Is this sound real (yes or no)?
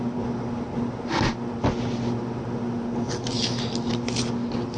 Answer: yes